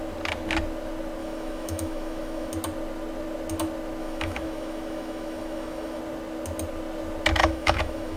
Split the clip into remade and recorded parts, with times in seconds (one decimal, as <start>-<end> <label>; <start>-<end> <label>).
0.0-1.2 recorded; 1.2-2.5 remade; 2.5-4.0 recorded; 4.0-6.0 remade; 6.0-7.4 recorded; 7.4-8.2 remade